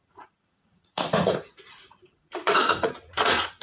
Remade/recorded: remade